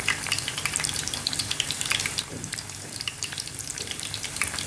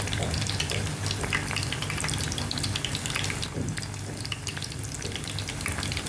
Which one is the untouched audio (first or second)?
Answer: second